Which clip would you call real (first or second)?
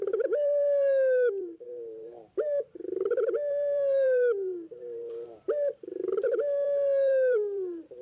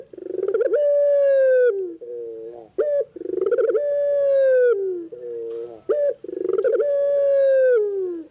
second